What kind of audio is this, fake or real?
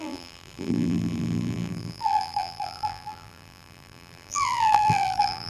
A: fake